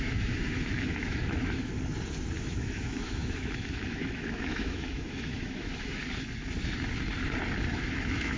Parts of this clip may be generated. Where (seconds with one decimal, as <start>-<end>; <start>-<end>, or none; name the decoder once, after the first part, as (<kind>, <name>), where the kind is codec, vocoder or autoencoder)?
0.0-1.7 (autoencoder, DAC-VAE); 2.4-6.0; 7.7-8.4